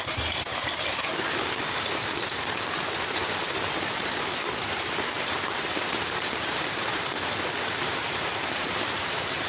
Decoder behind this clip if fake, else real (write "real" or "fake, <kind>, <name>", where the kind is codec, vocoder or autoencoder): fake, vocoder, BigVGAN v2